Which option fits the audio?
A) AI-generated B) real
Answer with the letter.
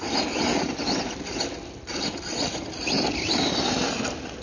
B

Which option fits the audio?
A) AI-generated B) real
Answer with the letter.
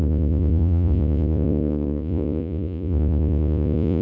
A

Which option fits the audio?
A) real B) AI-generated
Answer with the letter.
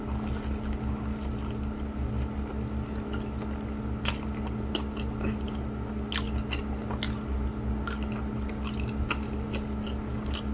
A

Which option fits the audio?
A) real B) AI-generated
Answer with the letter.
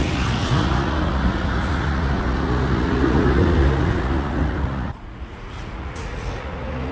B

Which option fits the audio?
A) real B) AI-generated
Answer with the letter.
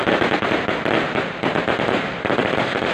B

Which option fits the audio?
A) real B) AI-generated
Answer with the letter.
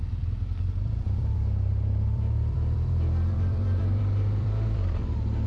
B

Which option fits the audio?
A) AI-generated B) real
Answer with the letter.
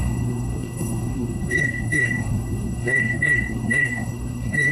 A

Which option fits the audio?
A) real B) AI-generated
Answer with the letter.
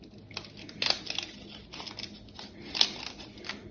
A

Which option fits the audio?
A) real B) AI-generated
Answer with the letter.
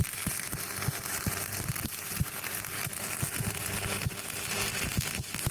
A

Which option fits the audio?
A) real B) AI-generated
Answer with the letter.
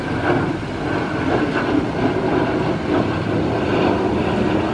A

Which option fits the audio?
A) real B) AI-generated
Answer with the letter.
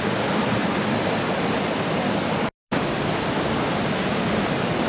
A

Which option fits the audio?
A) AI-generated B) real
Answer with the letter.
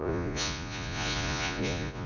A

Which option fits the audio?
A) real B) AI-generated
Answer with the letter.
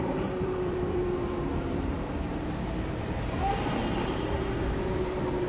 B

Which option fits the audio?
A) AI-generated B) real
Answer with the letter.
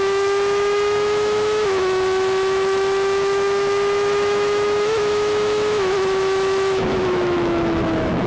A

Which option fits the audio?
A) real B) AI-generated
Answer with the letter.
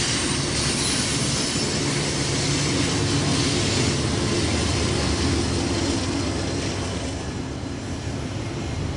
A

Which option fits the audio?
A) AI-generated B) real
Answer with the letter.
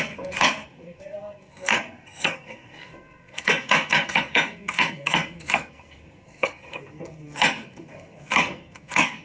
A